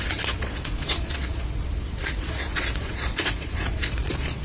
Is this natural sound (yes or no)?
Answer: no